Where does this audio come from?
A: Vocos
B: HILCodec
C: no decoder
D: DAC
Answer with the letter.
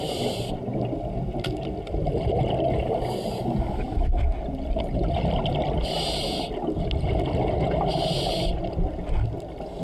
C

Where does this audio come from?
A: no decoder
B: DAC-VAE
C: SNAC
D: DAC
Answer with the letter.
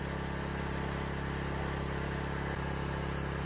A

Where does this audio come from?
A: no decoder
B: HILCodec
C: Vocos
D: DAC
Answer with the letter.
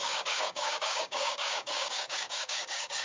D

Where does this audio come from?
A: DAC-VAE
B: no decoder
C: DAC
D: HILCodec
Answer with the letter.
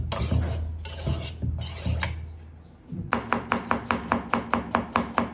B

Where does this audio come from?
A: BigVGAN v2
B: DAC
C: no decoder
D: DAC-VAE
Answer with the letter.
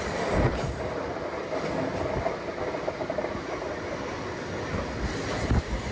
C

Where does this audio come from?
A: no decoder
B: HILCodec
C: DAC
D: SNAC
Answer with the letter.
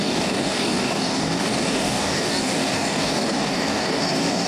C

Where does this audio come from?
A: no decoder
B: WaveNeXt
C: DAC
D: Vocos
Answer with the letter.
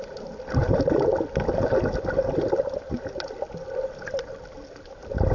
A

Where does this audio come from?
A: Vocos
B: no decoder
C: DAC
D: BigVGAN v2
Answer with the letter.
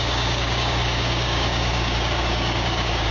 C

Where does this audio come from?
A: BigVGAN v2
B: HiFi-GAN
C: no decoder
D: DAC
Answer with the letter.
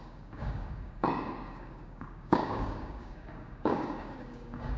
D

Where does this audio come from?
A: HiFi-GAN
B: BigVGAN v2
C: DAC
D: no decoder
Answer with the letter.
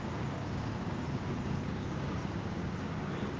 C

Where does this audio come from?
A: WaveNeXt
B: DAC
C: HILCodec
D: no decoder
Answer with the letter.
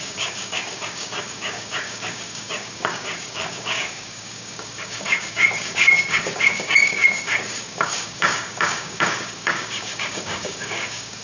B